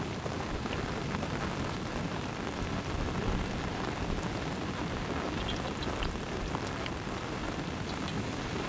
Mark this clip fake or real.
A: real